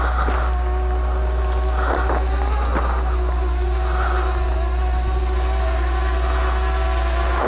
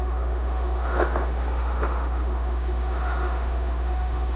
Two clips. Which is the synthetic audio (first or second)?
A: second